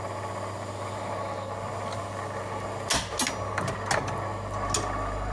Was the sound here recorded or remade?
recorded